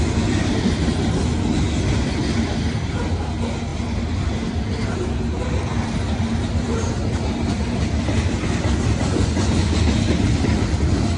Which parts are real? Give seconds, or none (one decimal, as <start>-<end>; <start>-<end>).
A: 0.0-9.1; 9.8-11.2